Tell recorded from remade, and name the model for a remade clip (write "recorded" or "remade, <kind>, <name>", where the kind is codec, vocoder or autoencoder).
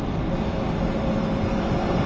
recorded